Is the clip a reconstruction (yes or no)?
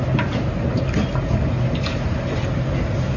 no